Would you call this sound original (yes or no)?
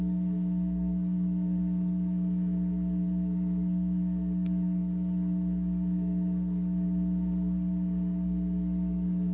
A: no